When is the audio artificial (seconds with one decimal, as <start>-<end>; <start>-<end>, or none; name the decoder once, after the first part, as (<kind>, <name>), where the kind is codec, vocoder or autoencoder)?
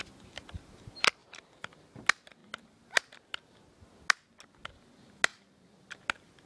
1.2-1.8 (vocoder, BigVGAN v2)